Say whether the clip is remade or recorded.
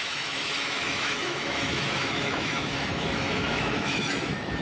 remade